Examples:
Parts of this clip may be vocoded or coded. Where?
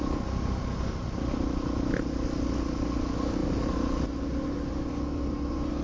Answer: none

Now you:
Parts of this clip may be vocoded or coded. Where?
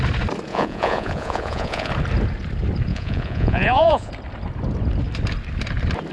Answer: 0.5-1.9 (vocoder, Vocos); 2.9-4.1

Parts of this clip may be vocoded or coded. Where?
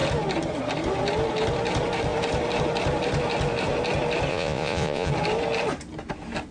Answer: 4.3-5.1 (vocoder, Vocos)